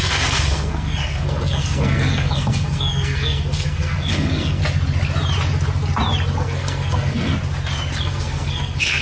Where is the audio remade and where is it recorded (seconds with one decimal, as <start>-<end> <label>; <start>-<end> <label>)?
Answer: 0.0-4.6 remade; 4.6-6.4 recorded; 6.4-7.3 remade; 7.3-8.0 recorded; 8.0-9.0 remade